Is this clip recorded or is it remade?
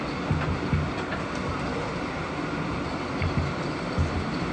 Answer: recorded